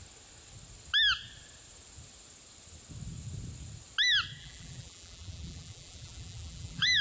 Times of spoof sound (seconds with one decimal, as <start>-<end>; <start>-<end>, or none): 4.4-7.0